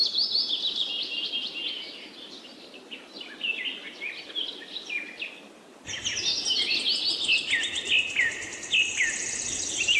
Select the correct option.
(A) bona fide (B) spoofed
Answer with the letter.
A